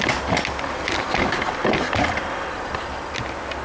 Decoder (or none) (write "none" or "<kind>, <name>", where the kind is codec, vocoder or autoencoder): none